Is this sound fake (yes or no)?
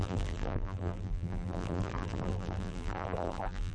yes